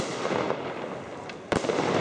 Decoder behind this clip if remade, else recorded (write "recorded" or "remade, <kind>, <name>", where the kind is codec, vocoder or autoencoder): recorded